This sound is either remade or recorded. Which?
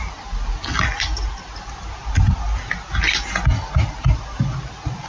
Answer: recorded